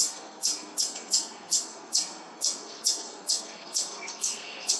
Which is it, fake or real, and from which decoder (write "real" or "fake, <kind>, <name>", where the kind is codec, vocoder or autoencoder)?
fake, codec, SNAC